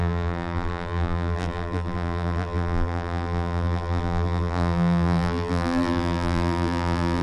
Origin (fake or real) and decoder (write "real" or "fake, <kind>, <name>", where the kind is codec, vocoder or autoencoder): fake, vocoder, BigVGAN v2